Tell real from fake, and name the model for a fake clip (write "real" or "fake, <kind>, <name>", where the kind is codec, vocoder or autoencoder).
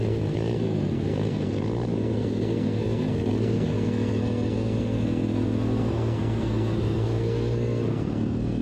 fake, codec, SNAC